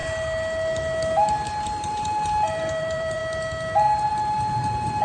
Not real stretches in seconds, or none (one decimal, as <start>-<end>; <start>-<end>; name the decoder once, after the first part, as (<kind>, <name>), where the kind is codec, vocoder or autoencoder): 1.8-3.2 (vocoder, BigVGAN v2); 4.1-5.0